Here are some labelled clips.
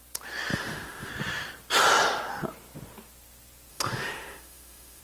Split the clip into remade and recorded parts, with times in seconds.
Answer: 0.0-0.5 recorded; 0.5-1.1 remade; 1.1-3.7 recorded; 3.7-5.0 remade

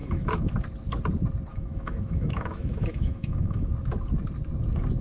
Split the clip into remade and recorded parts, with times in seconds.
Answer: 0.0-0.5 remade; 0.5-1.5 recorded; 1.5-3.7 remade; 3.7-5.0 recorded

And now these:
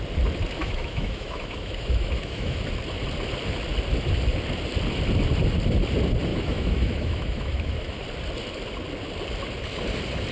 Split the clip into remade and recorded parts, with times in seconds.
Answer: 0.0-0.6 recorded; 0.6-2.6 remade; 2.6-6.3 recorded; 6.3-8.0 remade; 8.0-10.3 recorded

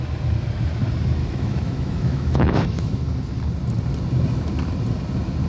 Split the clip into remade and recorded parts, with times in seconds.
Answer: 0.0-1.2 recorded; 1.2-3.0 remade; 3.0-5.5 recorded

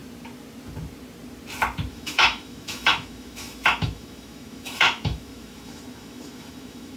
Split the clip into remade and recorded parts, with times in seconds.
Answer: 0.0-1.9 recorded; 1.9-7.0 remade